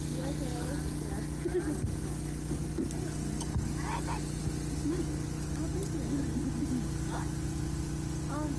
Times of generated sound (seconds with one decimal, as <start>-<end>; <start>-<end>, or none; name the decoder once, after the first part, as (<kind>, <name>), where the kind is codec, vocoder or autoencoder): none